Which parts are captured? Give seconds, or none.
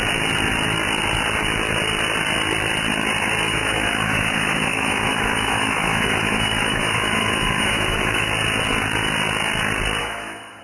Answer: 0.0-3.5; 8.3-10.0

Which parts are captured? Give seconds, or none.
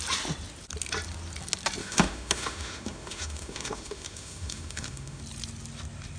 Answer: 0.0-1.8; 5.2-6.2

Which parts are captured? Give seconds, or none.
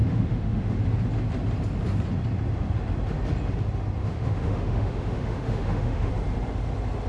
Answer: 0.8-4.0; 6.1-7.1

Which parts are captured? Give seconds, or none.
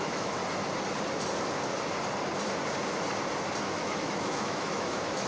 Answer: 0.4-3.6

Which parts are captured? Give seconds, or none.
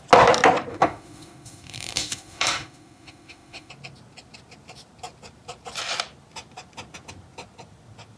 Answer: 0.0-0.7; 3.7-8.2